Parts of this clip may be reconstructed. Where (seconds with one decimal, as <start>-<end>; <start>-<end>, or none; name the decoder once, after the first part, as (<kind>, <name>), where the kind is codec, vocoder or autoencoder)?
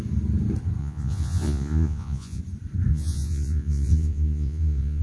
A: 0.8-2.4 (vocoder, Vocos); 2.9-5.0